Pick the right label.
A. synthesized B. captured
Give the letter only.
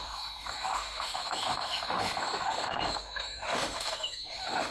A